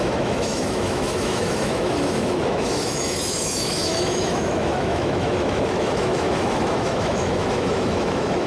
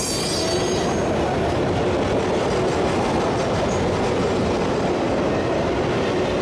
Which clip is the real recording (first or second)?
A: second